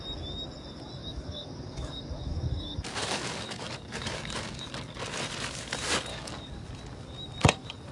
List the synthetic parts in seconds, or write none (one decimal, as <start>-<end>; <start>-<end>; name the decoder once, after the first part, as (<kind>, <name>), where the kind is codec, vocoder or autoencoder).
1.0-5.0 (codec, DAC); 6.1-6.7